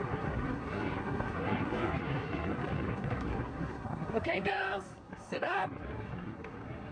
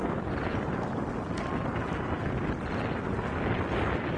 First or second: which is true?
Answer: second